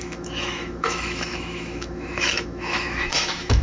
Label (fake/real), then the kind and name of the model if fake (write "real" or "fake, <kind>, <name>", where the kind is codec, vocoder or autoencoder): fake, autoencoder, DAC-VAE